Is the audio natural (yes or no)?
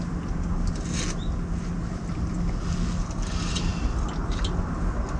yes